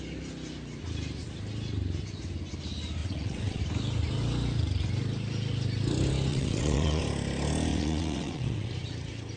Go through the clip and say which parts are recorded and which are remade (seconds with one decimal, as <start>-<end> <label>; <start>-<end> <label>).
0.0-3.0 recorded; 3.0-3.6 remade; 3.6-6.3 recorded; 6.3-7.0 remade; 7.0-7.7 recorded; 7.7-8.7 remade; 8.7-9.4 recorded